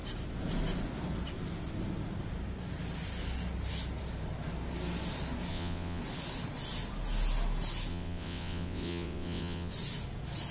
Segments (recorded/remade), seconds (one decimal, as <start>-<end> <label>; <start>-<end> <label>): 0.0-5.5 recorded; 5.5-6.0 remade; 6.0-7.9 recorded; 7.9-9.7 remade; 9.7-10.5 recorded